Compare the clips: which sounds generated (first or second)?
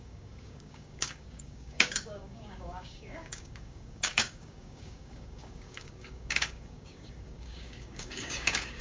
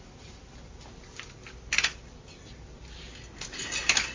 first